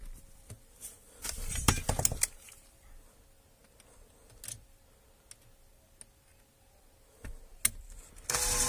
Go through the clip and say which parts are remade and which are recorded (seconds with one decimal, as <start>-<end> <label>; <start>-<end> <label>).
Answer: 0.0-8.7 recorded